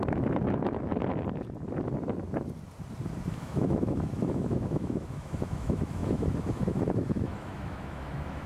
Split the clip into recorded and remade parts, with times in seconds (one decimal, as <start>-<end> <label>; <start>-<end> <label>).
0.0-0.9 remade; 0.9-3.3 recorded; 3.3-8.5 remade